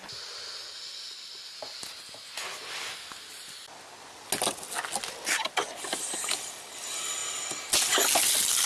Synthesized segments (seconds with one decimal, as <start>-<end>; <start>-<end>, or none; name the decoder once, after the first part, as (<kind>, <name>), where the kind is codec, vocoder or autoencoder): none